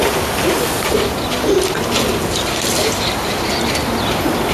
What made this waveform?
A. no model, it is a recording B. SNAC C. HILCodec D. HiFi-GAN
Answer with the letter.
A